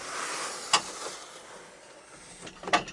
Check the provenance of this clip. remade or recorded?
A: recorded